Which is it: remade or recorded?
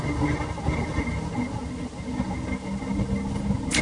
recorded